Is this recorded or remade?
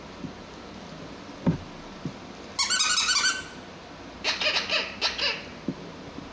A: recorded